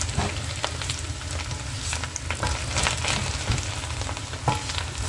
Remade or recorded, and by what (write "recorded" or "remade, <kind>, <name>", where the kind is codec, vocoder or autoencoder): recorded